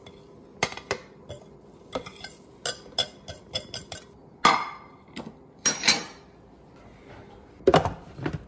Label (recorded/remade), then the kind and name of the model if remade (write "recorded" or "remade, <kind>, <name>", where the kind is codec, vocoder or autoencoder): recorded